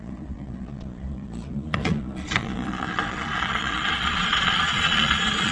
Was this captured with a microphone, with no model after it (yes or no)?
no